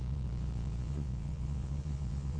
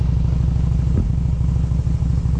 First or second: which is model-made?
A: first